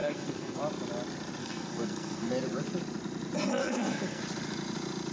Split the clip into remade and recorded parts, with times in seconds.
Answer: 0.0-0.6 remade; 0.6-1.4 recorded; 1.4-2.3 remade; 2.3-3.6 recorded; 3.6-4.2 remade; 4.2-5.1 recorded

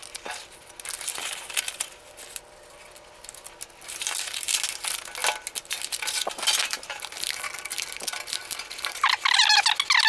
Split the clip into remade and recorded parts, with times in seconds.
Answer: 0.0-10.1 recorded

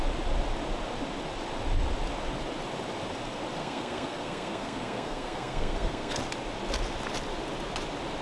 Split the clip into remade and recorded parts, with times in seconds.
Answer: 0.0-3.6 recorded; 3.6-6.2 remade; 6.2-8.2 recorded

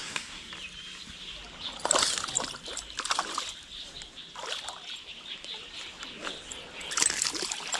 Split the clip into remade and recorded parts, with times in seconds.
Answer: 0.0-0.5 remade; 0.5-7.8 recorded

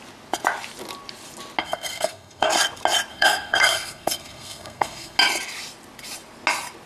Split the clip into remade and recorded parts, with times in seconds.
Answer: 0.0-1.6 recorded; 1.6-2.5 remade; 2.5-3.1 recorded; 3.1-5.2 remade; 5.2-6.9 recorded

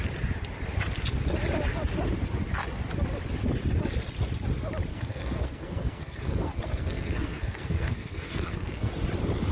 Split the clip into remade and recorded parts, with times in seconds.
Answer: 0.0-4.9 recorded; 4.9-8.9 remade; 8.9-9.5 recorded

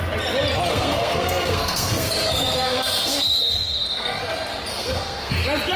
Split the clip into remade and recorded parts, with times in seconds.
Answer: 0.0-0.7 recorded; 0.7-4.2 remade; 4.2-4.7 recorded; 4.7-5.3 remade; 5.3-5.8 recorded

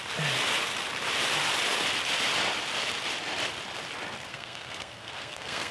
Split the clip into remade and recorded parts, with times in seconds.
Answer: 0.0-4.3 recorded; 4.3-5.7 remade